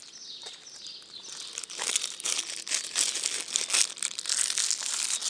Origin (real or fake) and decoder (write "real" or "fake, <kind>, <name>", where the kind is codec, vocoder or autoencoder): real